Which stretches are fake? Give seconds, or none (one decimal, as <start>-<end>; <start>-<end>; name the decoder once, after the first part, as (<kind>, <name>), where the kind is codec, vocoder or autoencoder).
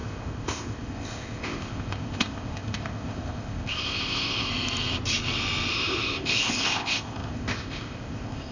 0.0-4.5 (codec, ZipCodec); 5.7-8.5